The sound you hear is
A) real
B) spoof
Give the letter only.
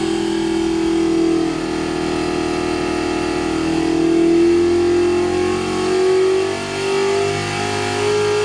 A